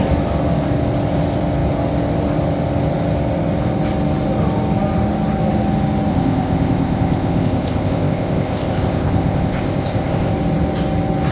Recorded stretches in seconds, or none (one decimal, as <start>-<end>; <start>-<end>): 0.0-6.1; 10.3-11.3